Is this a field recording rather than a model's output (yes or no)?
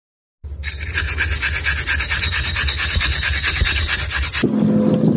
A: yes